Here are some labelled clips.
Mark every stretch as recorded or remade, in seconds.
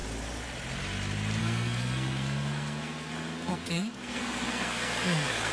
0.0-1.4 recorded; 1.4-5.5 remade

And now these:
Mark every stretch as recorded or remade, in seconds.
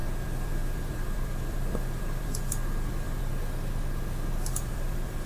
0.0-3.3 remade; 3.3-4.5 recorded; 4.5-5.3 remade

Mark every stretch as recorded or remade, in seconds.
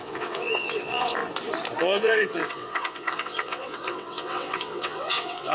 0.0-1.2 remade; 1.2-1.8 recorded; 1.8-5.5 remade